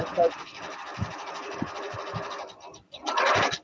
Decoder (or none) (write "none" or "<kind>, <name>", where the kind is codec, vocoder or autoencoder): none